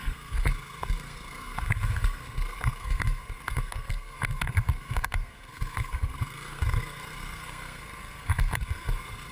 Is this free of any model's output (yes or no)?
no